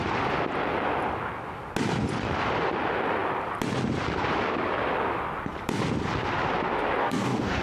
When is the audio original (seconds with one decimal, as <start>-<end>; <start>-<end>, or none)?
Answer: 0.0-7.0